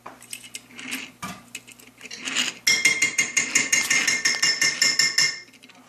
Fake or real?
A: real